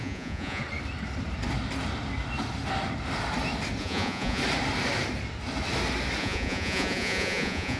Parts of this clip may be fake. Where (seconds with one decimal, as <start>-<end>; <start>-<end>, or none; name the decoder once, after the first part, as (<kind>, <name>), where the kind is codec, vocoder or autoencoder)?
0.0-0.6 (vocoder, Vocos); 3.8-4.4; 6.2-7.8